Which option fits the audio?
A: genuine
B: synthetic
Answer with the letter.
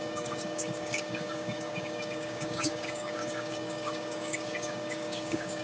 B